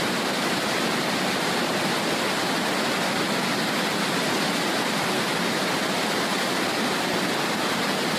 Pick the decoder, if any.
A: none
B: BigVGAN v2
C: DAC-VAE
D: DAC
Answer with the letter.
A